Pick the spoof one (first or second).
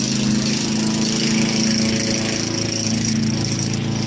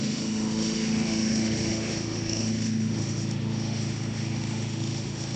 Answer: second